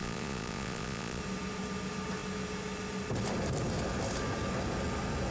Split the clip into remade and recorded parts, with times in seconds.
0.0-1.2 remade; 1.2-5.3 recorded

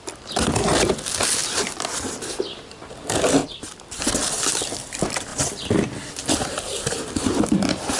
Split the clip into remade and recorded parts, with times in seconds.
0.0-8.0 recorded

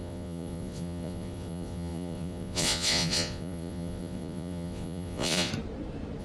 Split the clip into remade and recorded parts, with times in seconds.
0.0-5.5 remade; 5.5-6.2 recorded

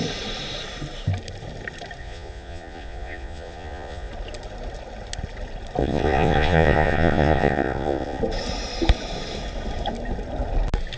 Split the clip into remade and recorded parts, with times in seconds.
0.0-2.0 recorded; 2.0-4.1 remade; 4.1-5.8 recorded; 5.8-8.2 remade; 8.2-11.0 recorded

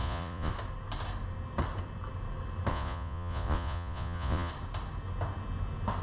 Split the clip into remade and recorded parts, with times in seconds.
0.0-0.5 remade; 0.5-2.7 recorded; 2.7-4.5 remade; 4.5-6.0 recorded

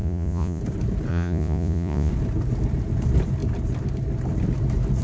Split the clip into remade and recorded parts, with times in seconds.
0.0-0.6 remade; 0.6-1.1 recorded; 1.1-2.1 remade; 2.1-5.0 recorded

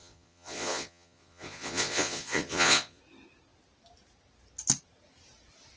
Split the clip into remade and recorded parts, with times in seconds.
0.0-3.0 remade; 3.0-5.8 recorded

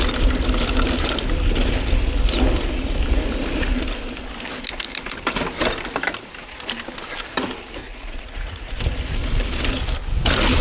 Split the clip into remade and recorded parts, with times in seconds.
0.0-7.8 recorded; 7.8-8.8 remade; 8.8-10.6 recorded